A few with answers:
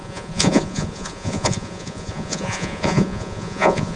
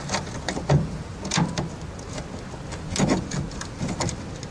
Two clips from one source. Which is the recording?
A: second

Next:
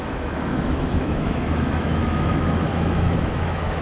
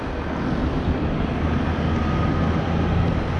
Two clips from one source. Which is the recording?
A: second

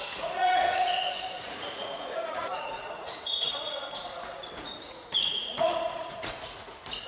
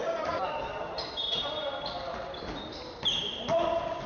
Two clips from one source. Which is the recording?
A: second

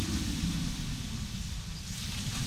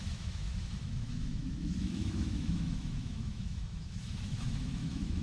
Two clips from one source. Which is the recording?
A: first